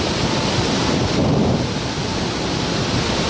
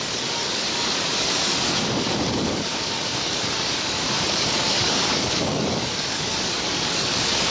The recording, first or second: first